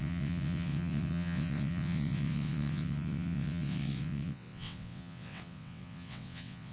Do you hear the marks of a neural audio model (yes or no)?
yes